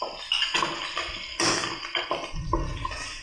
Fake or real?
real